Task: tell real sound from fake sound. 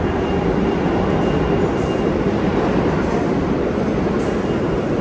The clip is real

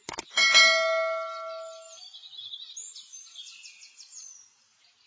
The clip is real